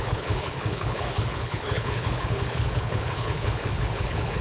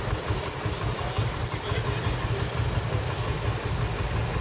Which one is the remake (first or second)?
first